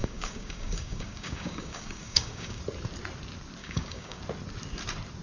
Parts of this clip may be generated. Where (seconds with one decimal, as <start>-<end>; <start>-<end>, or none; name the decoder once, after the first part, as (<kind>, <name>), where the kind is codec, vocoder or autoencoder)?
0.0-2.6 (codec, DAC); 3.6-4.2